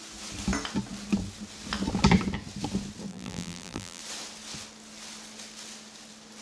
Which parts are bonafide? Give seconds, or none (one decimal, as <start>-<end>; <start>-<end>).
0.0-3.1; 4.0-6.4